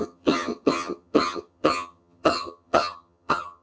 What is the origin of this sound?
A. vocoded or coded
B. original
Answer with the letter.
A